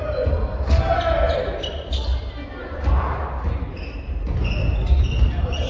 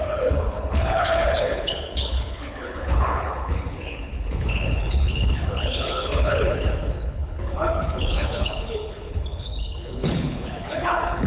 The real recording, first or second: first